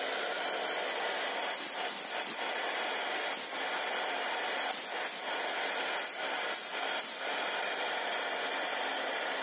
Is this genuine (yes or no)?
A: yes